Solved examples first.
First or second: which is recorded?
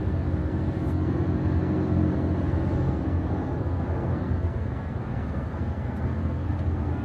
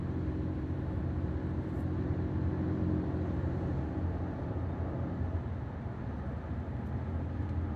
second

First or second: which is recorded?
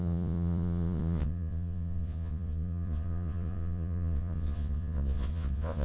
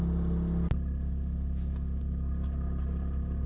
second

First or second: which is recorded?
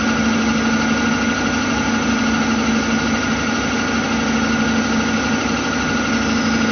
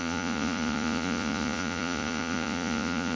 first